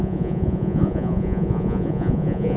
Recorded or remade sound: remade